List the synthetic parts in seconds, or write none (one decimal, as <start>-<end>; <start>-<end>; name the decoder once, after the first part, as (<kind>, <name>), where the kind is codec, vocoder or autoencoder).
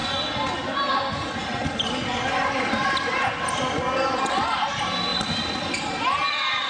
none